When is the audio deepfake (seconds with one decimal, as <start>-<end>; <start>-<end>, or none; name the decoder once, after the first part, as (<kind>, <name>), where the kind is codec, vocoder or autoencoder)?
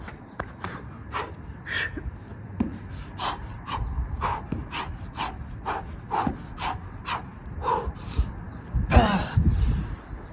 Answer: none